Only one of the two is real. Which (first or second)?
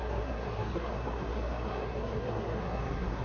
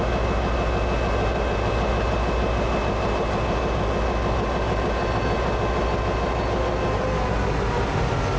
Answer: second